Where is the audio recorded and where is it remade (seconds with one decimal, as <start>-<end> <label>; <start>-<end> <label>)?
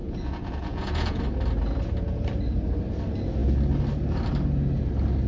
0.0-1.2 remade; 1.2-5.3 recorded